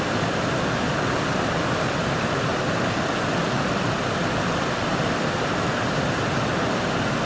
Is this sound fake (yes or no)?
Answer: no